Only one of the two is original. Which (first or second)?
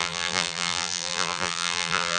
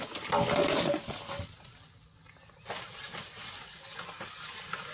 second